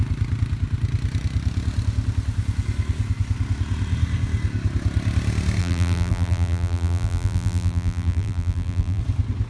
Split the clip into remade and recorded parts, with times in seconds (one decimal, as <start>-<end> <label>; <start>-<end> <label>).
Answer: 0.0-5.6 recorded; 5.6-9.0 remade; 9.0-9.5 recorded